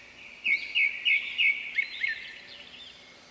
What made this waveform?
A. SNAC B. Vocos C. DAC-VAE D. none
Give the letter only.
D